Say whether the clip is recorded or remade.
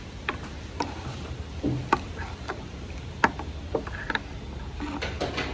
recorded